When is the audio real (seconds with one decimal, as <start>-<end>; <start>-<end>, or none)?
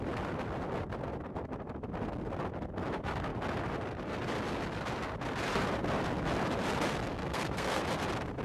0.0-7.2; 7.8-8.4